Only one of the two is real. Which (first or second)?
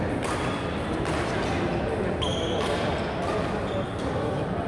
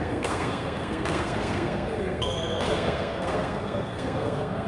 first